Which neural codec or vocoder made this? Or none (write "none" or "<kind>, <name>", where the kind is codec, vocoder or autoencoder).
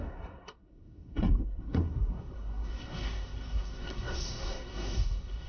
codec, SNAC